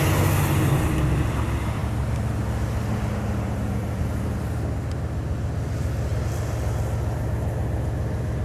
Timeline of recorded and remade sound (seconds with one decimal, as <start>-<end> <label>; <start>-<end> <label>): 0.0-8.4 recorded